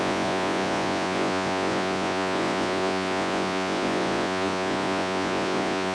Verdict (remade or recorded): remade